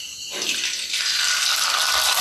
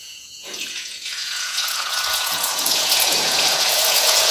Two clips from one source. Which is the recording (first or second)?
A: first